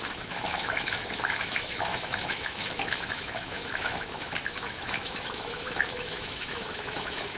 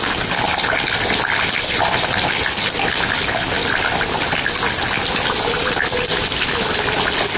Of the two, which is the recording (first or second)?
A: second